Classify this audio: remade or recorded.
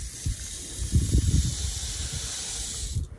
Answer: recorded